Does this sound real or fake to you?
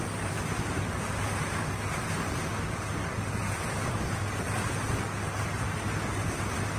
real